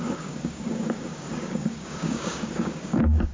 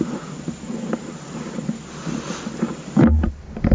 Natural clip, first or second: second